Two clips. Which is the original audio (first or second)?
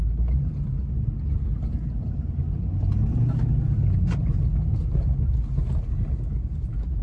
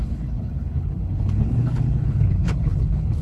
first